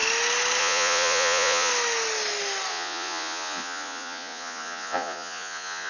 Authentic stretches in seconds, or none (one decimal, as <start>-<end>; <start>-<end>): 0.0-0.6; 1.7-2.7